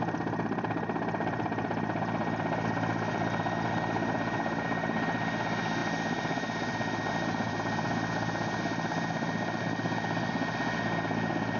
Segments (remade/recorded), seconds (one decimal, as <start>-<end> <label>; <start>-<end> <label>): 0.0-11.6 recorded